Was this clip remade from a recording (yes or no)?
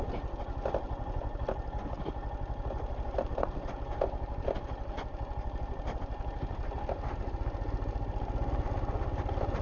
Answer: no